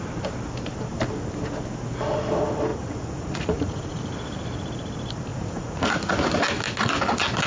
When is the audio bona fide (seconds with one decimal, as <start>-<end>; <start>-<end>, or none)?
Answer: 0.0-2.7; 4.0-5.3; 6.2-7.5